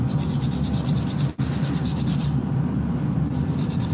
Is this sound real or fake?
real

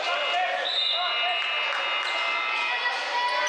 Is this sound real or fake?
real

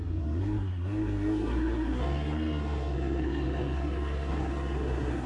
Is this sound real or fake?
fake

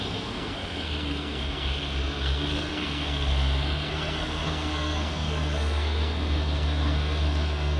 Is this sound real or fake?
fake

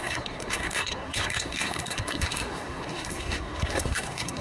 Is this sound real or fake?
fake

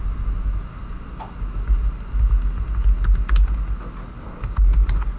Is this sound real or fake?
real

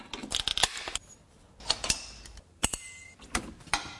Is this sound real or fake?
real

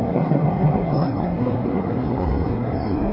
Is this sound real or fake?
fake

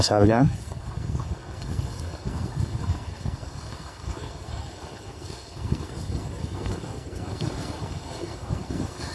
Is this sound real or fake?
fake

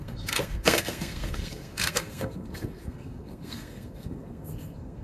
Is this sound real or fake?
fake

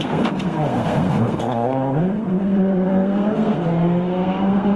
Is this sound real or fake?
fake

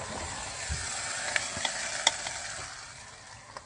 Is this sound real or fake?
real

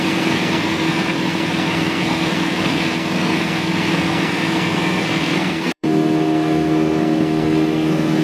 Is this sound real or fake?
fake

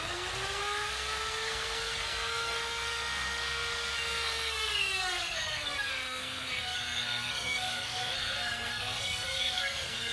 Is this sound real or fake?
fake